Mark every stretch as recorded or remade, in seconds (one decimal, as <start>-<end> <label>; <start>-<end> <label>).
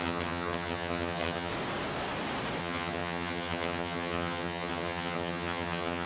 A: 0.0-1.5 remade; 1.5-2.6 recorded; 2.6-6.1 remade